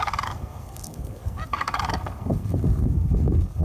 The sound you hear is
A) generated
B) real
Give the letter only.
A